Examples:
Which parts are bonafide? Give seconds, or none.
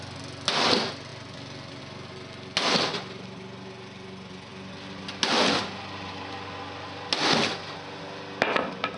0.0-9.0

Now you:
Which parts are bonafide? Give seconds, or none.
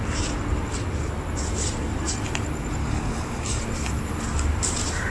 0.0-2.8; 3.6-5.1